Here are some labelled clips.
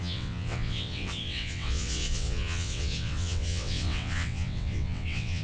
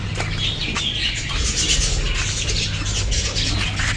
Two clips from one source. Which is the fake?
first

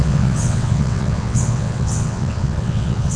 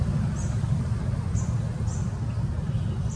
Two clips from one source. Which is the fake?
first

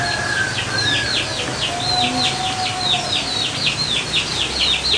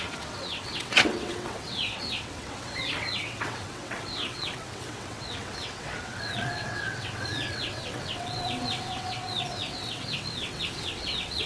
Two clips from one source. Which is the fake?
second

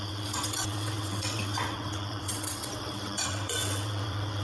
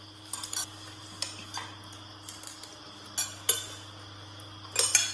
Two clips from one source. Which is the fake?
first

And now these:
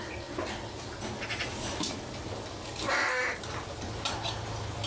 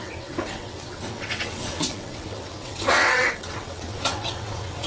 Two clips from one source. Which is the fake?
second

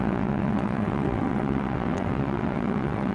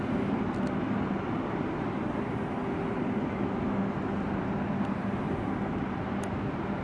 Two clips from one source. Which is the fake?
first